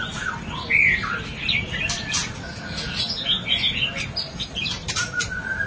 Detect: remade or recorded recorded